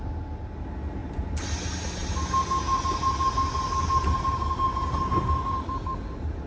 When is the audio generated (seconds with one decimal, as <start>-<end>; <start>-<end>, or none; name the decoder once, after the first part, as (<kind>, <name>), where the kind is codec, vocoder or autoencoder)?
1.0-1.6 (vocoder, BigVGAN v2)

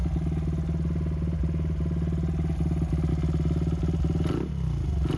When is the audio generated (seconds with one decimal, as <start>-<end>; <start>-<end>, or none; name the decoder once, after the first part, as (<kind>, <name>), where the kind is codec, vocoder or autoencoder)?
none

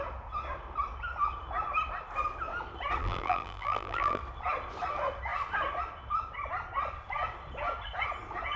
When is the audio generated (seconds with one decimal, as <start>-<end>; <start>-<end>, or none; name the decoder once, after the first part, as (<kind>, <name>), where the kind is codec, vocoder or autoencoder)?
3.0-4.2 (vocoder, BigVGAN v2)